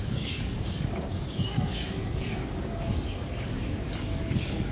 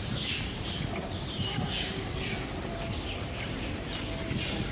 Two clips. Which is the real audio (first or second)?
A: second